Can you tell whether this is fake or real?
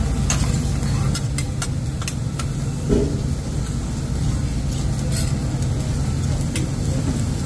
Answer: real